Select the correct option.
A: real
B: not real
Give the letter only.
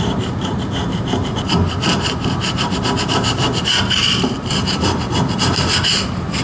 B